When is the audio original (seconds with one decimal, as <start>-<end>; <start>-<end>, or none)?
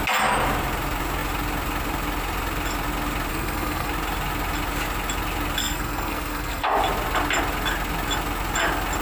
0.0-3.3; 3.9-5.6; 6.8-9.0